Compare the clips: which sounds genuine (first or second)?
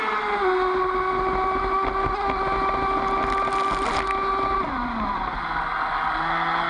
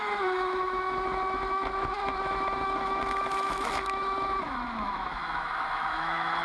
first